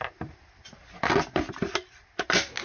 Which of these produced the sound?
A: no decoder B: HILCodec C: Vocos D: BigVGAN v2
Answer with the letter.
A